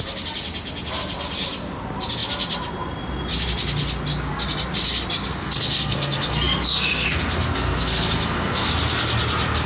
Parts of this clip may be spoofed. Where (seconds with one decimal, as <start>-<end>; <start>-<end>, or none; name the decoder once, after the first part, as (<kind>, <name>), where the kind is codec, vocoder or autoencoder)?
5.3-8.7 (codec, SNAC)